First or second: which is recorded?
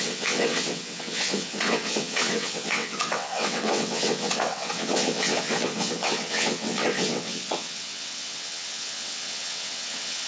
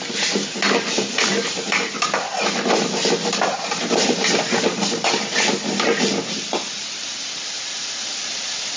second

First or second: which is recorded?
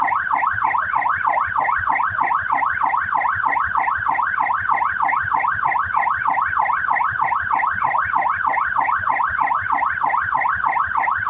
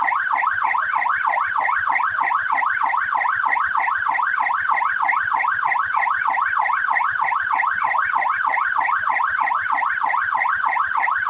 first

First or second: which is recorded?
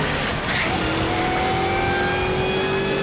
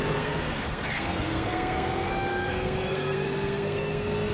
first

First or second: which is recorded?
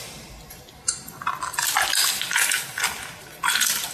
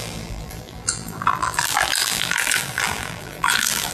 first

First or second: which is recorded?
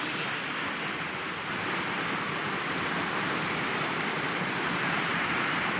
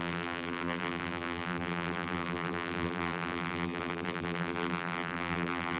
first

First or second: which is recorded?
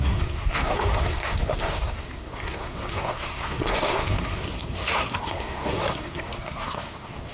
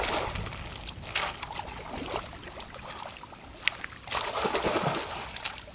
second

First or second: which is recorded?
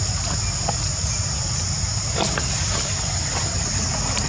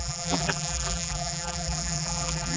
first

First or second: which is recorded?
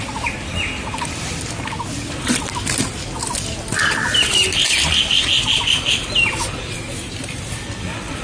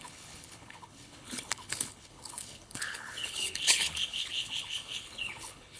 first